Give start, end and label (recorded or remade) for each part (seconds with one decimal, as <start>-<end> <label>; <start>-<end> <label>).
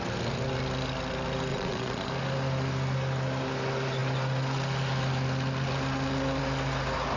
0.0-1.5 recorded; 1.5-2.1 remade; 2.1-7.2 recorded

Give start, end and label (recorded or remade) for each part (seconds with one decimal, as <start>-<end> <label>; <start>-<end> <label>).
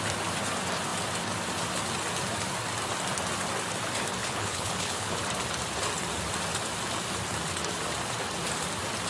0.0-4.2 recorded; 4.2-5.2 remade; 5.2-9.1 recorded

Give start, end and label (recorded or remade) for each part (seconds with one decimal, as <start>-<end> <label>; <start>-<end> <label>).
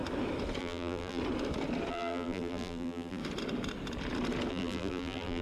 0.0-0.6 recorded; 0.6-1.2 remade; 1.2-1.9 recorded; 1.9-3.2 remade; 3.2-4.5 recorded; 4.5-5.4 remade